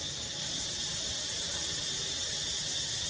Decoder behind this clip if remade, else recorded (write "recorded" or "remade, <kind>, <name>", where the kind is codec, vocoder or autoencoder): recorded